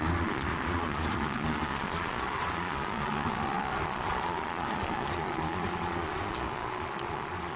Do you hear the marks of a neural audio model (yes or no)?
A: yes